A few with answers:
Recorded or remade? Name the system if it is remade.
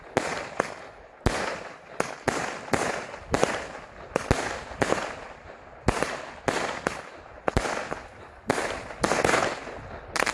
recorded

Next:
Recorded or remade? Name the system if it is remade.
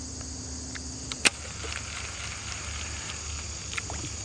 recorded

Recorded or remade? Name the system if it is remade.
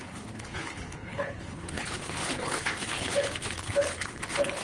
remade, codec, HILCodec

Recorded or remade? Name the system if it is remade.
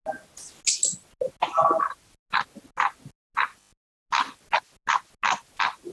recorded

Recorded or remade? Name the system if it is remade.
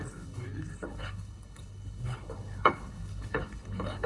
remade, codec, HILCodec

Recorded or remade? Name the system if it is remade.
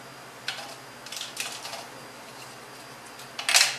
recorded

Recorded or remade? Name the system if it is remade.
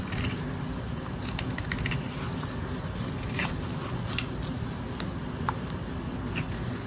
recorded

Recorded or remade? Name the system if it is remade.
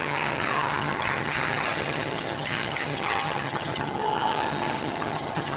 remade, vocoder, HiFi-GAN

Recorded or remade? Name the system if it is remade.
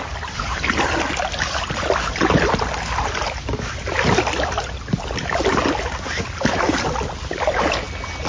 recorded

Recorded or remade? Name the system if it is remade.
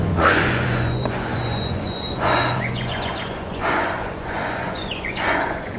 remade, vocoder, Vocos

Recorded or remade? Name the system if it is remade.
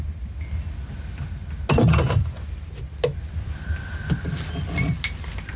recorded